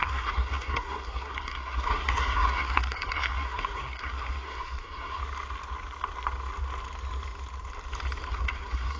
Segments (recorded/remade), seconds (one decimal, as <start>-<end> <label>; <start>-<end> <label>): 0.0-5.2 remade; 5.2-8.3 recorded; 8.3-9.0 remade